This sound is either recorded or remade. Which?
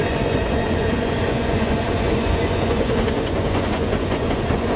remade